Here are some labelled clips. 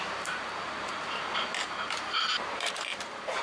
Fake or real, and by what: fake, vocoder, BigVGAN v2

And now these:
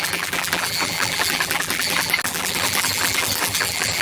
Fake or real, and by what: fake, vocoder, BigVGAN v2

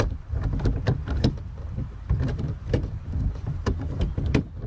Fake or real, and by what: fake, vocoder, BigVGAN v2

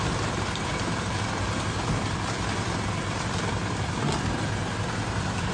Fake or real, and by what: fake, vocoder, BigVGAN v2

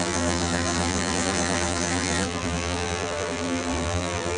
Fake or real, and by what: fake, vocoder, BigVGAN v2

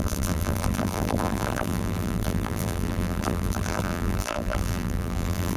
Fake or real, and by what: fake, vocoder, BigVGAN v2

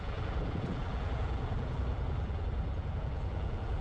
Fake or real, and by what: fake, vocoder, BigVGAN v2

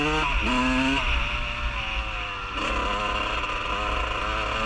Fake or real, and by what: real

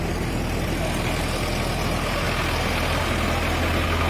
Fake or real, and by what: real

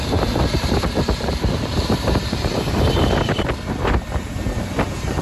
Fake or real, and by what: fake, vocoder, BigVGAN v2